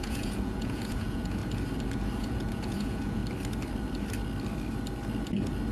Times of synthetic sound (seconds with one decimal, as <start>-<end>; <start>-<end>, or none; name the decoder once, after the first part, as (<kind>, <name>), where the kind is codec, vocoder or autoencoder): 0.0-1.4 (vocoder, Vocos); 2.2-3.2